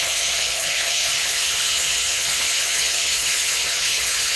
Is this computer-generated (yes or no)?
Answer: yes